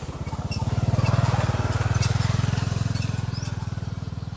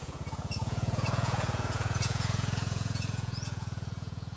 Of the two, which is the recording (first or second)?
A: first